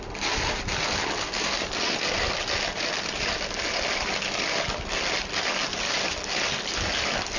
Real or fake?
real